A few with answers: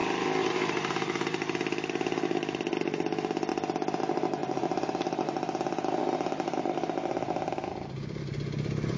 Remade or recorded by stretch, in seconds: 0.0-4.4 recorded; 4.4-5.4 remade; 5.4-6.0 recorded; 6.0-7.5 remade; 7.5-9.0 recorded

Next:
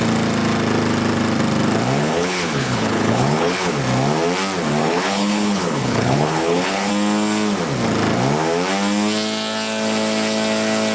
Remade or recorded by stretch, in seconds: 0.0-2.0 recorded; 2.0-3.7 remade; 3.7-4.8 recorded; 4.8-6.9 remade; 6.9-10.9 recorded

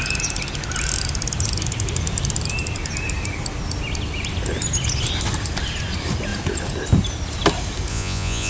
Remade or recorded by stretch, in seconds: 0.0-7.9 recorded; 7.9-8.5 remade

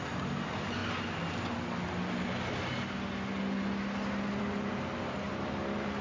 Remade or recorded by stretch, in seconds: 0.0-6.0 recorded